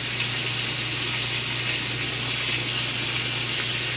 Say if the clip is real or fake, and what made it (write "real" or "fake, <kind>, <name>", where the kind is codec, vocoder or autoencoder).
real